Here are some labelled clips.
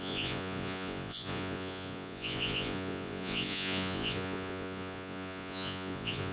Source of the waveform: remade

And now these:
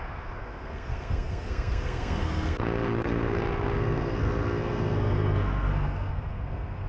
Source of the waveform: remade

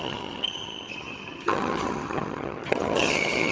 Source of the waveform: remade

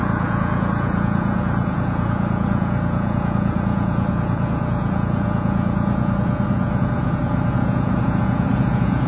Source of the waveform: remade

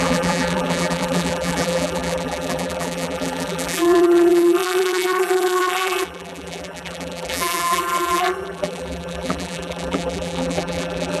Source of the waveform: remade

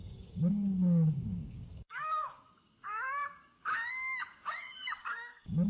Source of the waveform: remade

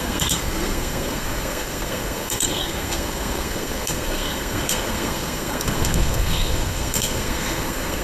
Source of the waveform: remade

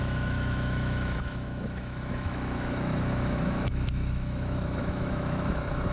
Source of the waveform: remade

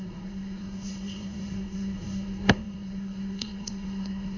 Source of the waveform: remade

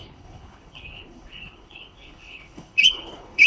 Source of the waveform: remade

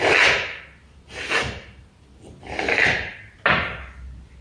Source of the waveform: recorded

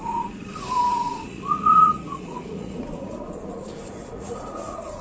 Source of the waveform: remade